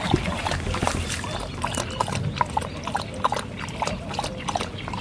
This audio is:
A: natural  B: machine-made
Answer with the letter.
A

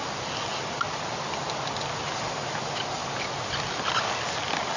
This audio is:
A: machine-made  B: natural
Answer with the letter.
B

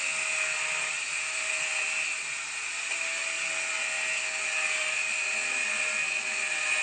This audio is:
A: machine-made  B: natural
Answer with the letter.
B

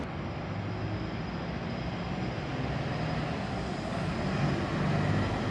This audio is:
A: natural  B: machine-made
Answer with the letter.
A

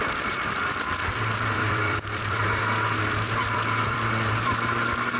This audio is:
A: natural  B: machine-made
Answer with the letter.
B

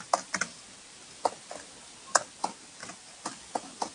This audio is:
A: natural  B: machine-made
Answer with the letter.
A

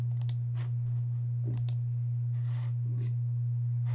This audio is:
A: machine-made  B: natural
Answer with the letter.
B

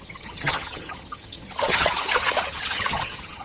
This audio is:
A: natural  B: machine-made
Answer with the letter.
B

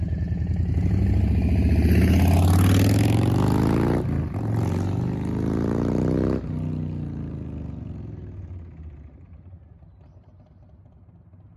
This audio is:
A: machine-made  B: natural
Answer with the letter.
B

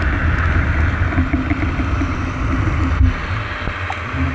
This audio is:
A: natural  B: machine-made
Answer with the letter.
A